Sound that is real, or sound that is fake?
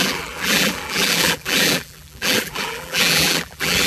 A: fake